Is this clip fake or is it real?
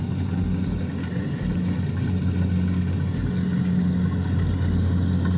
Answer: real